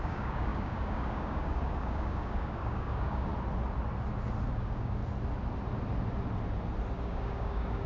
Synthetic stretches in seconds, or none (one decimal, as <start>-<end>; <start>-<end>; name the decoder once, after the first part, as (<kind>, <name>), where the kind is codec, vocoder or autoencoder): 0.0-3.3 (codec, DAC); 4.5-5.0; 7.0-7.9